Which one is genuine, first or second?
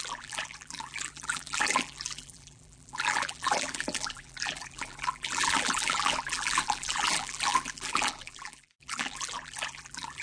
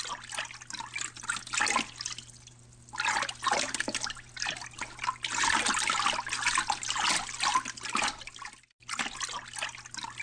second